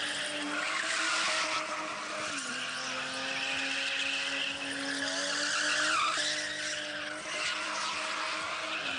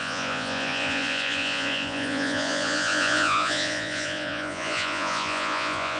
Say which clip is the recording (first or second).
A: first